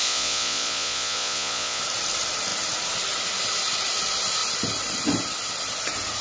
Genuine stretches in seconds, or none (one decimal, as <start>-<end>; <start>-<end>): 1.8-6.2